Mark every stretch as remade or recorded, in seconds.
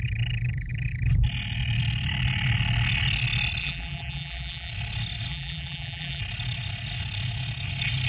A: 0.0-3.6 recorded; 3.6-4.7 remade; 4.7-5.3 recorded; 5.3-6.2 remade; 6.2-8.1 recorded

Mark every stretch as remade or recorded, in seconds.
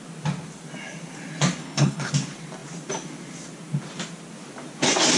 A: 0.0-1.6 recorded; 1.6-2.1 remade; 2.1-5.2 recorded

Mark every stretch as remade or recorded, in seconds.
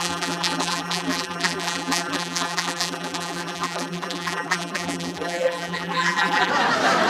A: 0.0-6.5 remade; 6.5-7.1 recorded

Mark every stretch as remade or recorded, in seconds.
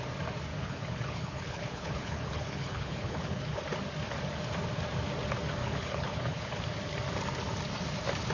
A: 0.0-0.5 recorded; 0.5-3.6 remade; 3.6-5.6 recorded; 5.6-6.6 remade; 6.6-8.3 recorded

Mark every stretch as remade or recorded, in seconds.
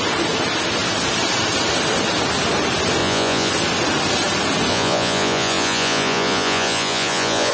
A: 0.0-3.0 recorded; 3.0-3.5 remade; 3.5-4.7 recorded; 4.7-7.5 remade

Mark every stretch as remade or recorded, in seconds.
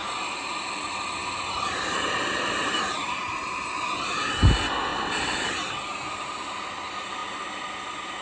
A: 0.0-1.2 recorded; 1.2-4.3 remade; 4.3-4.9 recorded; 4.9-5.5 remade; 5.5-8.2 recorded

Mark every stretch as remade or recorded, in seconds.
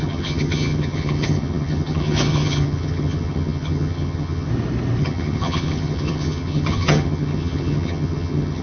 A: 0.0-4.5 remade; 4.5-5.0 recorded; 5.0-8.6 remade